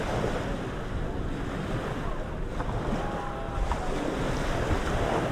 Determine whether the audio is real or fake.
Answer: real